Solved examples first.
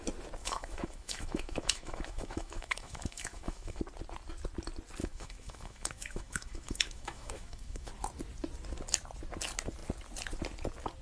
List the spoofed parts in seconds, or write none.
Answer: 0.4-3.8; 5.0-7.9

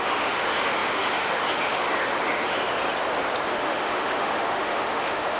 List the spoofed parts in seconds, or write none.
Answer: 0.0-2.7; 3.5-5.4

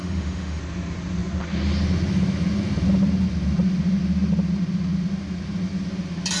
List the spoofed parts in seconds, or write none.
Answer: 0.0-0.6

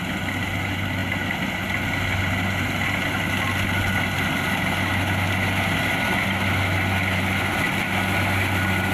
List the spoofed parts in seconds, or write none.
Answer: none